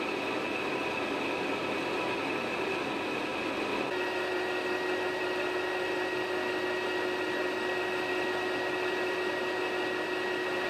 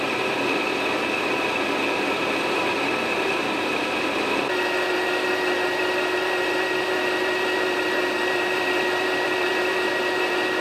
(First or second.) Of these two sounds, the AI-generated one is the second